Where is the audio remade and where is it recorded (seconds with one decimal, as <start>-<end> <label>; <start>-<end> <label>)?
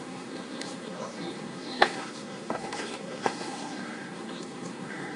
0.0-5.2 remade